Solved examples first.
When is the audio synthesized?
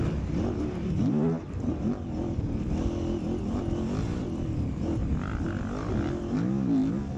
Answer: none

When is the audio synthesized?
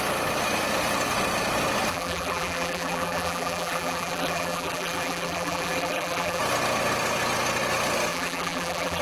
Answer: 1.9-6.4 (vocoder, BigVGAN v2); 8.1-9.0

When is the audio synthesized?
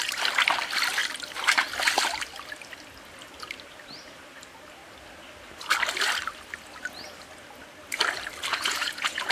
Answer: 8.5-9.3 (vocoder, Vocos)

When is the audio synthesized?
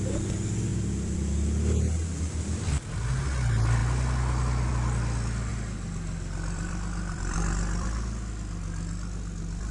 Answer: 0.7-2.6 (vocoder, BigVGAN v2); 5.5-9.7